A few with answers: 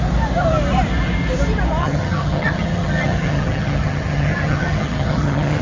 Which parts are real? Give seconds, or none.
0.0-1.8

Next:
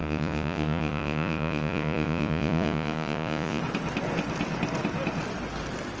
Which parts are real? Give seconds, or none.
3.6-6.0

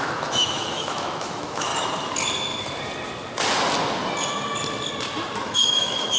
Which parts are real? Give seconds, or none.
1.7-5.4

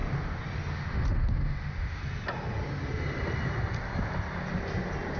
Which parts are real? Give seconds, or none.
0.0-0.7; 2.0-5.2